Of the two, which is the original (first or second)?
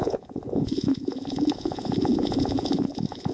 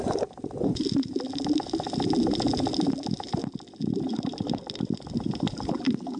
second